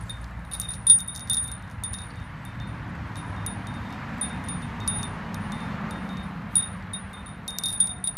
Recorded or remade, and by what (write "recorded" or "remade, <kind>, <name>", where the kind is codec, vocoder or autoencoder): recorded